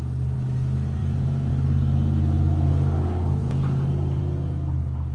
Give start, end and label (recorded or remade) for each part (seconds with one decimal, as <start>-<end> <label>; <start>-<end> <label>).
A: 0.0-1.0 recorded; 1.0-1.5 remade; 1.5-3.4 recorded; 3.4-4.2 remade; 4.2-5.1 recorded